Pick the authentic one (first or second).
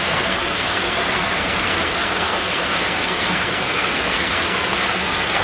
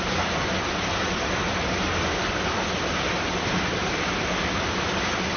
second